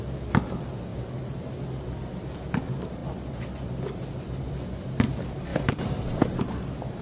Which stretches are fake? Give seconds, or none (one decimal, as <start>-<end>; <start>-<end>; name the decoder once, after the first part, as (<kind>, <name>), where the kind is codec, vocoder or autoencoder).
5.5-6.4 (vocoder, BigVGAN v2)